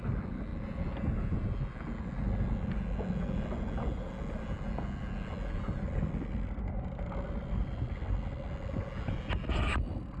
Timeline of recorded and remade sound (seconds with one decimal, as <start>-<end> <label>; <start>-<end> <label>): 0.0-10.2 recorded